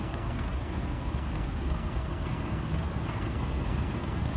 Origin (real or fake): fake